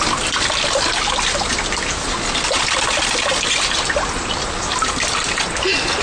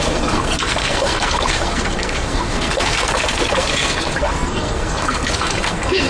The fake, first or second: second